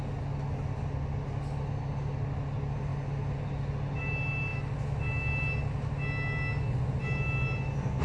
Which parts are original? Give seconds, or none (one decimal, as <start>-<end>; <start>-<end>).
0.0-8.0